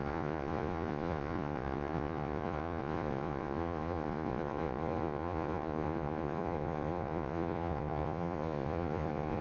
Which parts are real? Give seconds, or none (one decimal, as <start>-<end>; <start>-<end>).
none